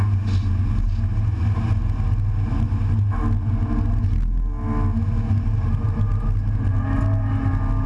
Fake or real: real